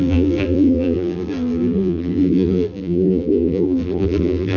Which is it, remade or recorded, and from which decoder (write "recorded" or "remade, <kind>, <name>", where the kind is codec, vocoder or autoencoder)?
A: remade, vocoder, BigVGAN v2